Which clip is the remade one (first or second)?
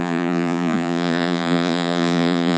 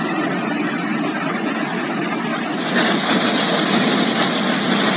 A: first